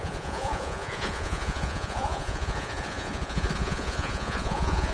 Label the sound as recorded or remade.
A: remade